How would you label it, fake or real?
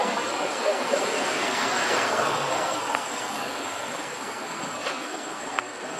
fake